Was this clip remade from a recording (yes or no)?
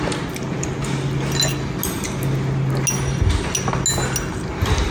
no